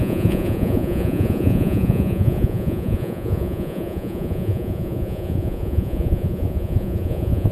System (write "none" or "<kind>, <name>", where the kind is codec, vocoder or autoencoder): vocoder, Vocos